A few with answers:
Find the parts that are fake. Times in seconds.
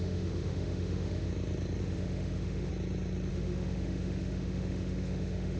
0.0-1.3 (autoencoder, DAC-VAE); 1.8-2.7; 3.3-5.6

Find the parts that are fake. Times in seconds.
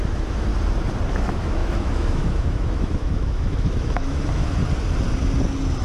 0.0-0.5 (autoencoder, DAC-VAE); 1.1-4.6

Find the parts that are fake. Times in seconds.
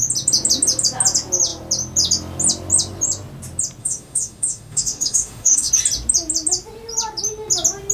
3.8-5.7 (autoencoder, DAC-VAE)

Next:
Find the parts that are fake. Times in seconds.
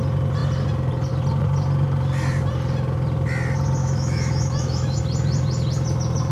3.8-5.0 (autoencoder, DAC-VAE)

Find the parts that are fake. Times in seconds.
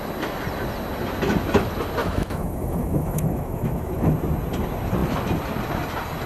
2.0-4.1 (autoencoder, DAC-VAE)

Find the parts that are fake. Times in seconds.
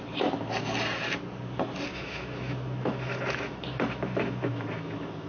1.9-5.3 (autoencoder, DAC-VAE)